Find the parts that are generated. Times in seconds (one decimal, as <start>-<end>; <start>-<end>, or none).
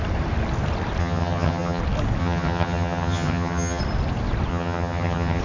1.0-1.8; 2.2-3.8; 4.5-5.4